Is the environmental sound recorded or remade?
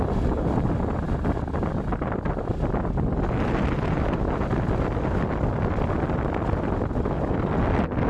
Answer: recorded